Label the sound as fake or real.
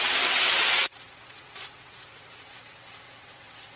fake